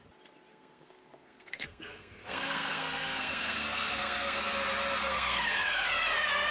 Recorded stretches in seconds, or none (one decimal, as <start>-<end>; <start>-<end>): 0.0-0.5; 4.4-5.0; 5.9-6.5